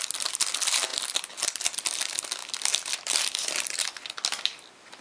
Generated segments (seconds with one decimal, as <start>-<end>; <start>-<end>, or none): none